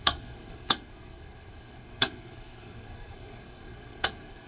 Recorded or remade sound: remade